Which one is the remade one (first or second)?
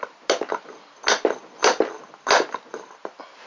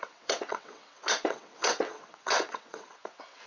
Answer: second